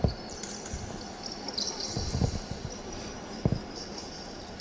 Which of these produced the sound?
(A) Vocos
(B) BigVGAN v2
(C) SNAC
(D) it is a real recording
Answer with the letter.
B